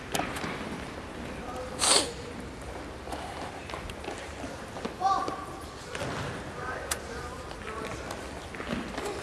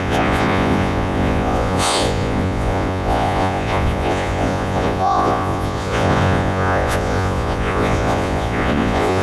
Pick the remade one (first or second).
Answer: second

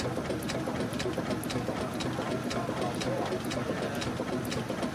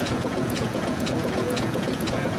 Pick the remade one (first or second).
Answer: second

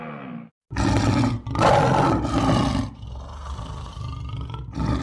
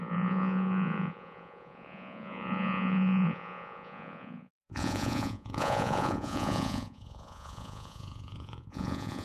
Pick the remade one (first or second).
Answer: second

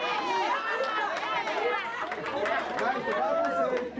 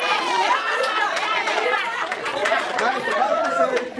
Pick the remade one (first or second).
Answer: second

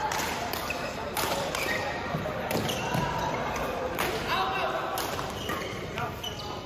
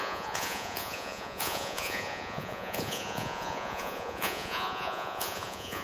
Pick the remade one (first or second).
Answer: second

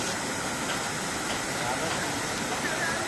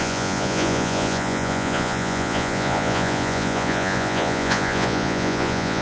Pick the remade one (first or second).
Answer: second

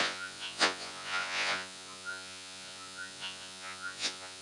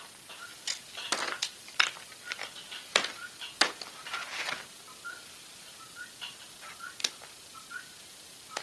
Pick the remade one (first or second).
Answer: first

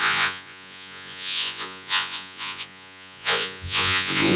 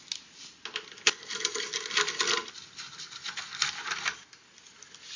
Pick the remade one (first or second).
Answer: first